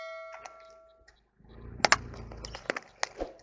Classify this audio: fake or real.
real